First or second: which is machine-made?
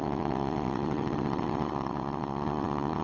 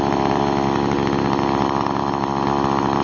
first